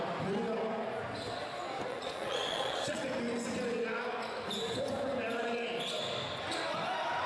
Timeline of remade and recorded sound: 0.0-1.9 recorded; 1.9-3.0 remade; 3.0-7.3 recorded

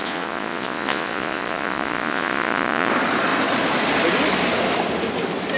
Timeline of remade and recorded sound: 0.0-2.9 remade; 2.9-5.6 recorded

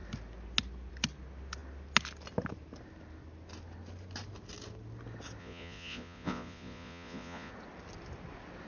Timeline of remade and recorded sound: 0.0-5.4 recorded; 5.4-7.5 remade; 7.5-8.7 recorded

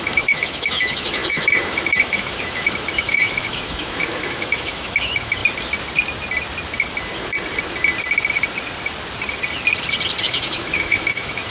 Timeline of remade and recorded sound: 0.0-5.4 remade; 5.4-10.2 recorded; 10.2-11.5 remade

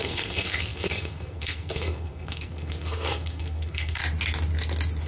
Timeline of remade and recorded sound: 0.0-4.0 remade; 4.0-5.1 recorded